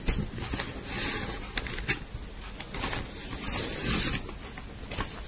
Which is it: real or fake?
real